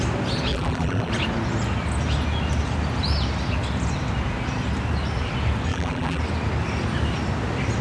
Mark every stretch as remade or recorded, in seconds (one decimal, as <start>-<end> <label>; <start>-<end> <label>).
0.0-0.5 recorded; 0.5-1.1 remade; 1.1-5.7 recorded; 5.7-6.2 remade; 6.2-7.8 recorded

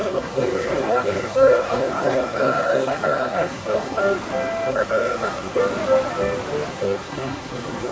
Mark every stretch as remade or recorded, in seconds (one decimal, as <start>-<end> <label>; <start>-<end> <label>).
0.0-4.0 remade; 4.0-4.7 recorded; 4.7-5.6 remade; 5.6-6.7 recorded; 6.7-7.9 remade

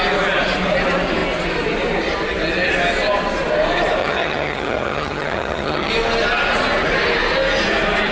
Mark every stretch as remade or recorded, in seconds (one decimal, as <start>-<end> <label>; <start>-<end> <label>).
0.0-4.0 recorded; 4.0-5.9 remade; 5.9-8.1 recorded

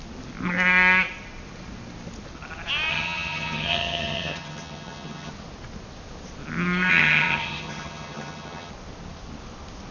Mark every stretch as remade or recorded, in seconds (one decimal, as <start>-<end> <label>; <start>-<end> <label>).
0.0-2.9 recorded; 2.9-5.3 remade; 5.3-6.9 recorded; 6.9-8.7 remade; 8.7-9.9 recorded

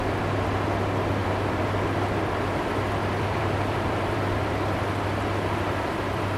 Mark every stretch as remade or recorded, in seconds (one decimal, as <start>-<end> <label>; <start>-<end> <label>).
0.0-1.2 recorded; 1.2-1.9 remade; 1.9-3.0 recorded; 3.0-4.3 remade; 4.3-6.4 recorded